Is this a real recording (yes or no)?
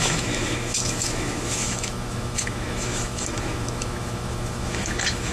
no